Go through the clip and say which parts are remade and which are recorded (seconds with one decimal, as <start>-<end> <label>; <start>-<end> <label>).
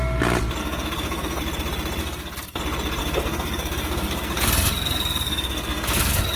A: 0.0-0.6 recorded; 0.6-1.4 remade; 1.4-2.0 recorded; 2.0-2.6 remade; 2.6-3.0 recorded; 3.0-6.4 remade